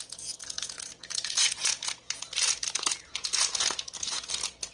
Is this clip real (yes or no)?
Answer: no